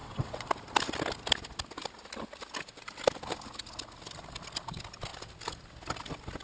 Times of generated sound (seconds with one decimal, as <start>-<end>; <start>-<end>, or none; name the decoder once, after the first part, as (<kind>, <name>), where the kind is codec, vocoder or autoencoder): 0.0-0.5 (vocoder, WaveNeXt)